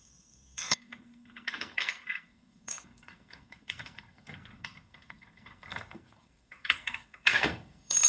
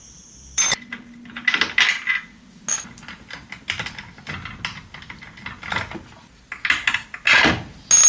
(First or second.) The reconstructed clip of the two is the first